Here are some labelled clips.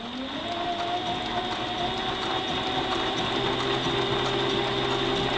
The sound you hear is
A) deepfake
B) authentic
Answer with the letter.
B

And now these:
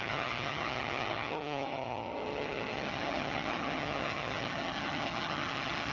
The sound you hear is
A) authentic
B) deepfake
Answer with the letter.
B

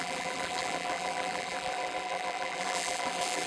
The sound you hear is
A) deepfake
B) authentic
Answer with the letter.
A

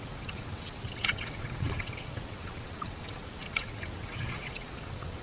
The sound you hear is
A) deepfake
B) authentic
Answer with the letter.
A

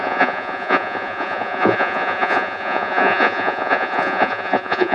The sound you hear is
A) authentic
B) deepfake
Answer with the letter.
B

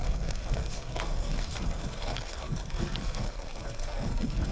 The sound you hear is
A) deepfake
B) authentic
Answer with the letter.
A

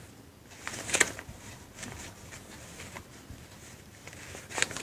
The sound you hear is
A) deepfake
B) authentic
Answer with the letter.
B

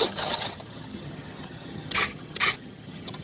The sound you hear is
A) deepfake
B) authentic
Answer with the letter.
A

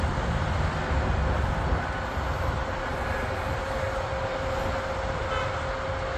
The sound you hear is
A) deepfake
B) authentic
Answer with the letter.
B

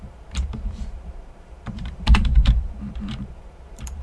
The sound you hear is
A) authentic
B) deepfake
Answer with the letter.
B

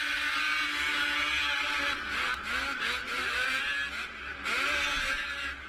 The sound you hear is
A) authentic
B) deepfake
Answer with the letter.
A